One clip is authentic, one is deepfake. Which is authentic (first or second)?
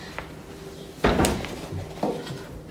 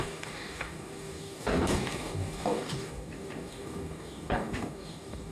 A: first